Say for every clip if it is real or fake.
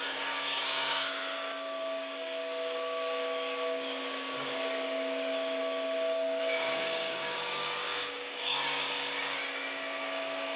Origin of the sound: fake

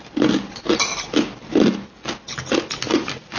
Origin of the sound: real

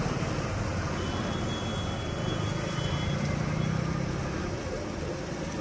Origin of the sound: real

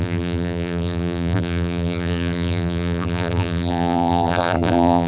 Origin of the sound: fake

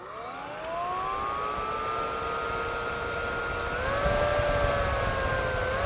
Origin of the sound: real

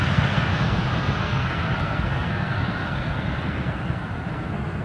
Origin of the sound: fake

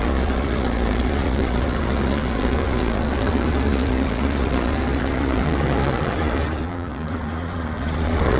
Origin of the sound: fake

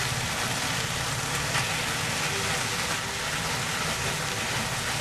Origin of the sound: real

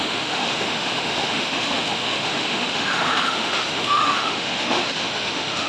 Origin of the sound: fake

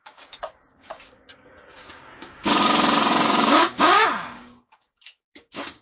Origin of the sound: fake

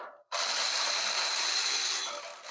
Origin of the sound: fake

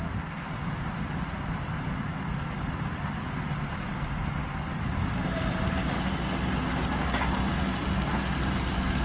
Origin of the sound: real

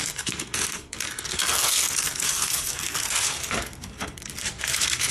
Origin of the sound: fake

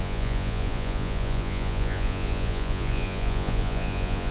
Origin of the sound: fake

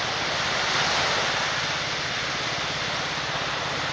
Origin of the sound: real